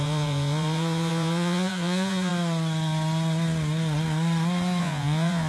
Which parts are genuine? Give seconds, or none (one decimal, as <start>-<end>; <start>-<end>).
2.3-4.8